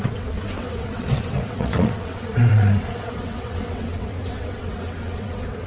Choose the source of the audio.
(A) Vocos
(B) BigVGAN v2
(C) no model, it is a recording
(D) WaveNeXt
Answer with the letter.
D